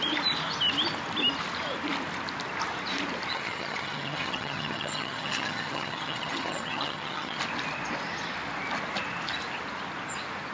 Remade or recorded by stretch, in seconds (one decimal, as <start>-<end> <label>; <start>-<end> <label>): 0.0-3.3 recorded; 3.3-7.4 remade; 7.4-10.5 recorded